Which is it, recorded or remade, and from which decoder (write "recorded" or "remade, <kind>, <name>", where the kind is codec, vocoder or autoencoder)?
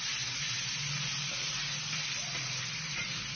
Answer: remade, vocoder, BigVGAN v2